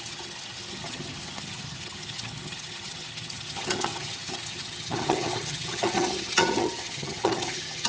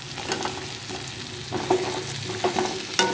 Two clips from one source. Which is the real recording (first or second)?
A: second